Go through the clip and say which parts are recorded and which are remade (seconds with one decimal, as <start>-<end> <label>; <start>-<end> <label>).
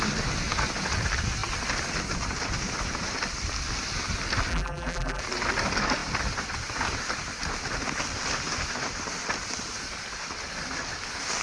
0.0-4.5 recorded; 4.5-5.2 remade; 5.2-11.4 recorded